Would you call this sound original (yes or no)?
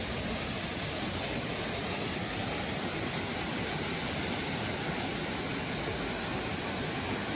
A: yes